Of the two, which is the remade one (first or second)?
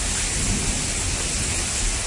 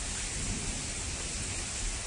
second